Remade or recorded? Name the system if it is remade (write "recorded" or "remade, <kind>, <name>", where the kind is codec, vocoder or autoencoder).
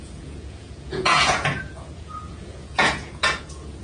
remade, vocoder, Vocos